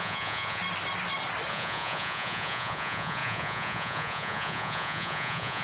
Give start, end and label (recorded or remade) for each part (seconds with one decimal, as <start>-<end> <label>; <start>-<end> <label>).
0.0-0.6 remade; 0.6-1.5 recorded; 1.5-5.6 remade